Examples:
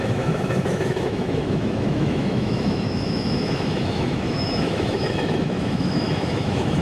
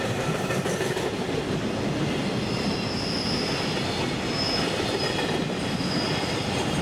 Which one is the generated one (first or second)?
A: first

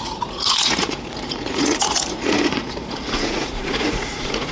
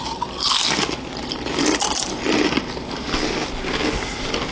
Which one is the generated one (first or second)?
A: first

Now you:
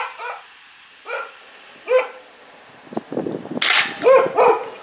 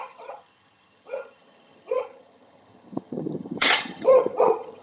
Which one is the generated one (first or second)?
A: second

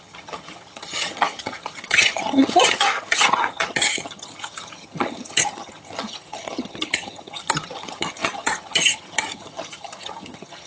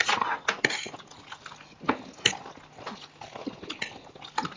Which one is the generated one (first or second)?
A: first